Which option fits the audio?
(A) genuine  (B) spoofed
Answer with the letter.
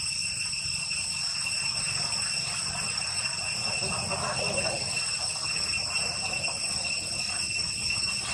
A